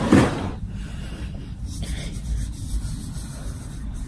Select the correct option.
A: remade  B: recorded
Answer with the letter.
B